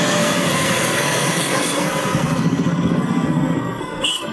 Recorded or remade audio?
remade